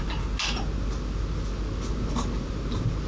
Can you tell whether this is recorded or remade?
recorded